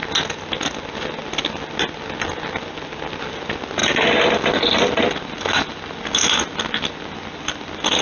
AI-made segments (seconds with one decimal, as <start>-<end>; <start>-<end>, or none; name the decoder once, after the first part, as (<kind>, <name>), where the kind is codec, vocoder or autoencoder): none